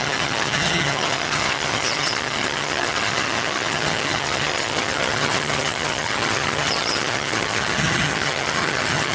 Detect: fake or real fake